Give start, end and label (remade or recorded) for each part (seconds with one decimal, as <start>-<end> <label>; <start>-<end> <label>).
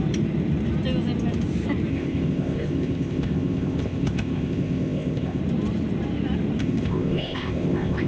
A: 0.0-1.9 recorded; 1.9-5.4 remade; 5.4-6.6 recorded; 6.6-8.1 remade